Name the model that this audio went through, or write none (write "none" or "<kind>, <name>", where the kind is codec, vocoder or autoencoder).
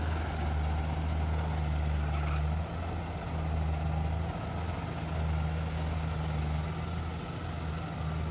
none